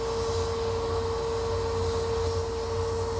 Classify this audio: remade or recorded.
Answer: recorded